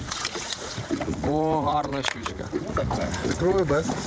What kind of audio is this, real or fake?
fake